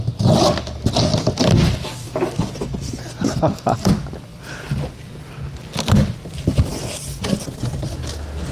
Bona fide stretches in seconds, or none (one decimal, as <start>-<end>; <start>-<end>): 0.0-1.1; 2.5-8.5